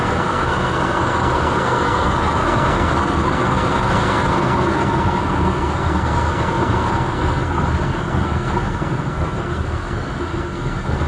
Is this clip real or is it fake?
fake